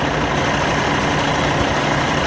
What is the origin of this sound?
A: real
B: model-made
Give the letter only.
A